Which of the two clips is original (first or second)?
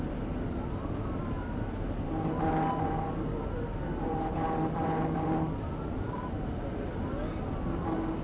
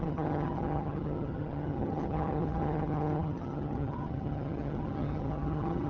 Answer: first